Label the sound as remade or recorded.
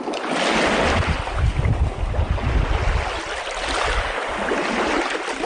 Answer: recorded